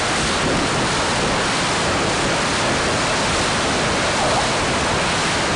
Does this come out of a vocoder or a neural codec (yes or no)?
no